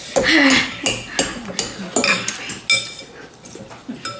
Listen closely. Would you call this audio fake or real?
real